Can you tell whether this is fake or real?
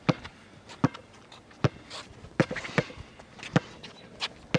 real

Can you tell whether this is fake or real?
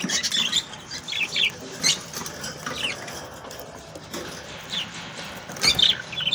real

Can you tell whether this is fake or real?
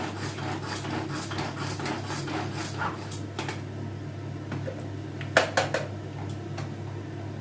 real